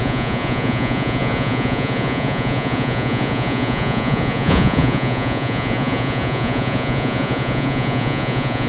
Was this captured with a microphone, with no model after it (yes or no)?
no